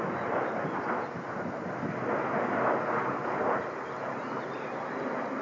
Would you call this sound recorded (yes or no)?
yes